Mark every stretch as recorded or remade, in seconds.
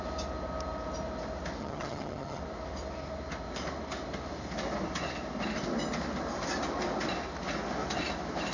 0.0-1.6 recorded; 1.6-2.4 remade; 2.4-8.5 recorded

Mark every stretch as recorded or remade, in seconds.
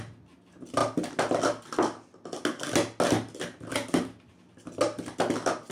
0.0-5.7 recorded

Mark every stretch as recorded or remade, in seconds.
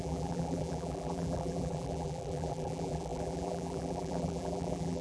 0.0-5.0 remade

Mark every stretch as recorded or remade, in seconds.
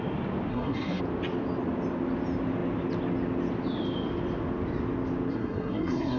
0.0-0.5 recorded; 0.5-1.0 remade; 1.0-5.3 recorded; 5.3-6.2 remade